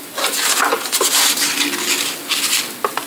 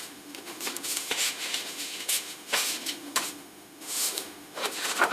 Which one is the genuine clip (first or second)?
first